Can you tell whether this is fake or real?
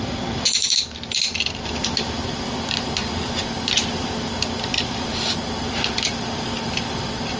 real